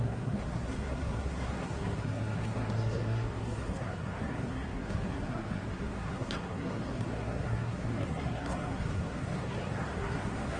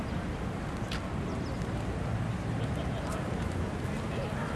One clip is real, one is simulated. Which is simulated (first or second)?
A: first